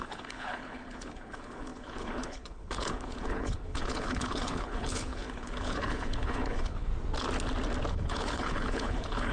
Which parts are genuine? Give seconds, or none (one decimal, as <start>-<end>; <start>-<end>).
6.9-7.9